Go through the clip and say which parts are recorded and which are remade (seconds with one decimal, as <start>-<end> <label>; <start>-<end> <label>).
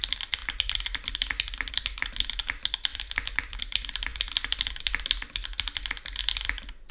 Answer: 0.0-6.9 recorded